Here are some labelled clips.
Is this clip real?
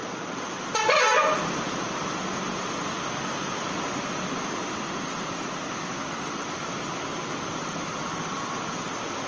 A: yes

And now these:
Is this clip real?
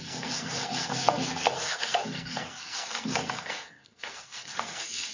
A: no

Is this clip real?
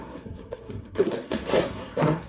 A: no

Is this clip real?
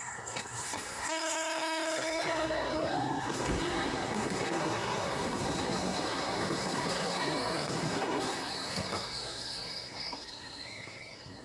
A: no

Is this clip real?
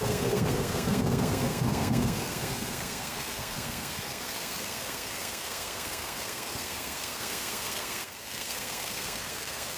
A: no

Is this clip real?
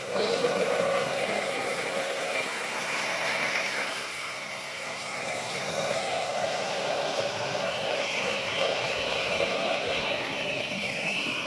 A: no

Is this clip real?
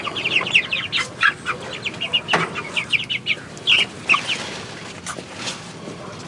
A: yes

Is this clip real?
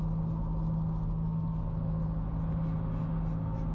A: yes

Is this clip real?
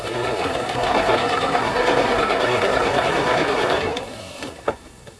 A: no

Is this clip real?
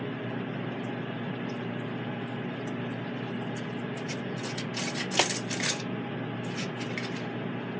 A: yes